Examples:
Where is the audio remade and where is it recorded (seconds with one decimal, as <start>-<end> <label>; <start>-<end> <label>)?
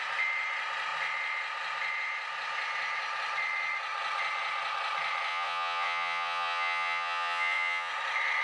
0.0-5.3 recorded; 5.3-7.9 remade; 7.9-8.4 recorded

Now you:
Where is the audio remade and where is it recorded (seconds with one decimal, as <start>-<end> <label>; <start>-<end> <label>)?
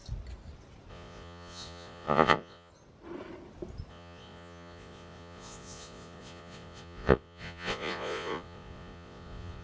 0.0-0.9 recorded; 0.9-2.7 remade; 2.7-3.9 recorded; 3.9-9.6 remade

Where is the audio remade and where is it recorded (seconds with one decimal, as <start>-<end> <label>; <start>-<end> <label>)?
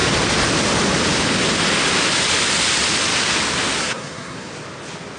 0.0-3.8 recorded; 3.8-4.5 remade; 4.5-5.2 recorded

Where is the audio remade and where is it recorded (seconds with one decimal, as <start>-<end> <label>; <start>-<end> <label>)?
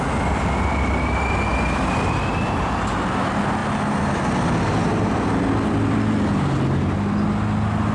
0.0-7.9 recorded